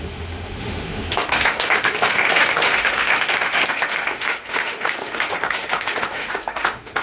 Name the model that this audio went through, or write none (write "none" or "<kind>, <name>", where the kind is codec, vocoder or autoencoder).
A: autoencoder, DAC-VAE